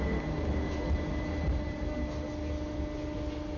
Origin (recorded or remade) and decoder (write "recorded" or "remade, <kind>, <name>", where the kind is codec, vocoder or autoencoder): recorded